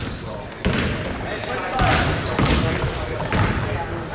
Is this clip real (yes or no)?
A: yes